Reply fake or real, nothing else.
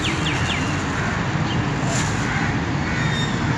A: real